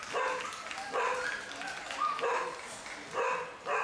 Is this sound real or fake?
real